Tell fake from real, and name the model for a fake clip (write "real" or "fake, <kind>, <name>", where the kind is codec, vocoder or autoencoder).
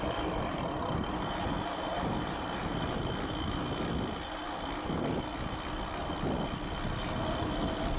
real